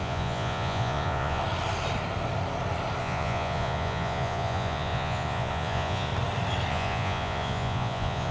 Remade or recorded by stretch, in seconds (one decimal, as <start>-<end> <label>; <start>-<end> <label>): 0.0-1.4 remade; 1.4-3.0 recorded; 3.0-6.1 remade; 6.1-6.7 recorded; 6.7-8.3 remade